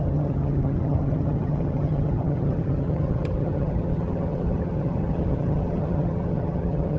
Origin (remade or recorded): remade